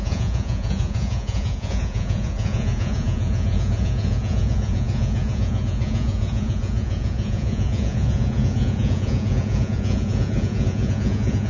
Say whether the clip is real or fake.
fake